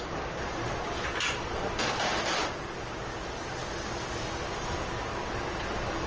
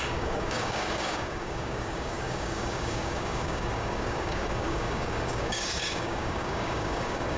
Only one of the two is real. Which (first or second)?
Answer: first